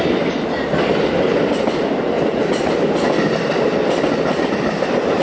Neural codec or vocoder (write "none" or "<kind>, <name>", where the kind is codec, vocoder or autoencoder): vocoder, BigVGAN v2